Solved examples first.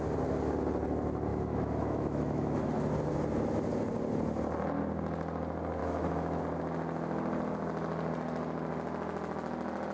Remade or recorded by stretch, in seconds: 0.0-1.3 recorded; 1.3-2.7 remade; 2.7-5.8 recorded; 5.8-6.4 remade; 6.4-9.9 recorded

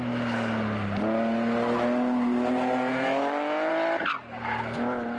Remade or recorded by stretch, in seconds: 0.0-2.9 recorded; 2.9-3.7 remade; 3.7-5.2 recorded

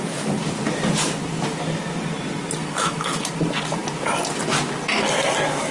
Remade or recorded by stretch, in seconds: 0.0-2.6 recorded; 2.6-3.3 remade; 3.3-5.7 recorded

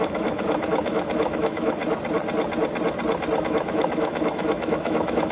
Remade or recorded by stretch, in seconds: 0.0-1.8 remade; 1.8-3.4 recorded; 3.4-5.3 remade

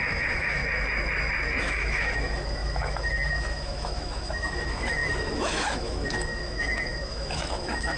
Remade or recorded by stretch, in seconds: 0.0-0.6 remade; 0.6-1.6 recorded; 1.6-8.0 remade